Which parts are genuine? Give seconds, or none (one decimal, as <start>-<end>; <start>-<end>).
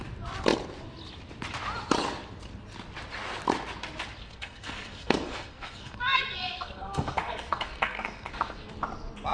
0.0-4.2; 8.7-9.3